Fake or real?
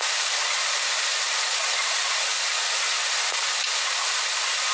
real